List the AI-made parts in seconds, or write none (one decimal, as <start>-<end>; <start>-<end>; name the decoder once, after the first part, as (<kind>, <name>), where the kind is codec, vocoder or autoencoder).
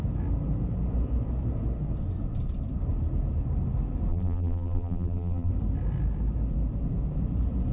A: 4.1-5.5 (vocoder, BigVGAN v2)